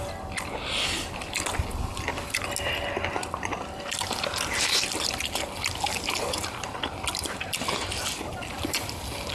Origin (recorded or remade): recorded